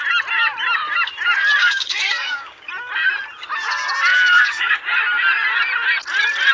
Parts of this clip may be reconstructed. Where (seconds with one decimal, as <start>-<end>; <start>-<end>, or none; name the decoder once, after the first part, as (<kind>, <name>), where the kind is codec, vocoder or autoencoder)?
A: 1.6-2.7 (codec, DAC); 4.1-4.8